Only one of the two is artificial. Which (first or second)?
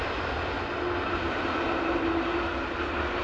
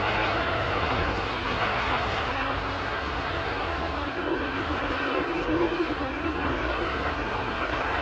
second